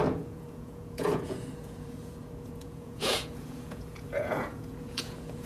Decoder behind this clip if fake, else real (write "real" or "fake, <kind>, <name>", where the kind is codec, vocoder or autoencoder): fake, vocoder, Vocos